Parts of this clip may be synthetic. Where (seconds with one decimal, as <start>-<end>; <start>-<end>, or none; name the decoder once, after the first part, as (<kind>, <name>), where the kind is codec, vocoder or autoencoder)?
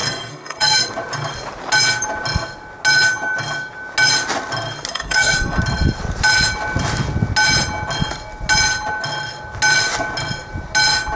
0.0-0.9 (codec, SNAC); 4.9-5.6